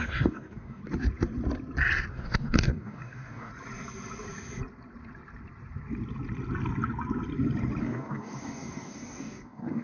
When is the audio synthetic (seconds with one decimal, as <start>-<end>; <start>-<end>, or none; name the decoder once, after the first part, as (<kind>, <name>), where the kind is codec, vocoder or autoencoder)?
0.0-0.8 (codec, DAC); 2.1-3.5; 7.8-9.8